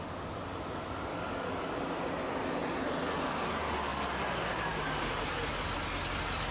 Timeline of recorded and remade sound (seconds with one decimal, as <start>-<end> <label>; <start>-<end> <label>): 0.0-1.1 recorded; 1.1-1.7 remade; 1.7-6.5 recorded